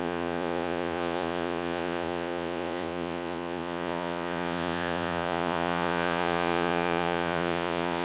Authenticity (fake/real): fake